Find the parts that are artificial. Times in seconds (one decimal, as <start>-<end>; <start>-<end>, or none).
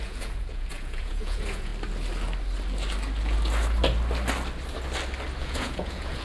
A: 0.0-1.7; 5.4-6.2